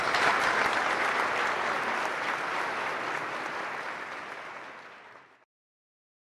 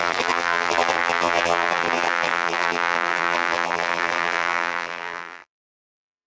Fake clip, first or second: second